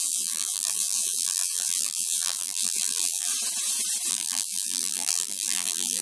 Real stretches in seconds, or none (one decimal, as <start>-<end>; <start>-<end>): 3.3-4.1